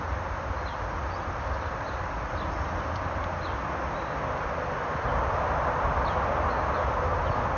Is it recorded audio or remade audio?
recorded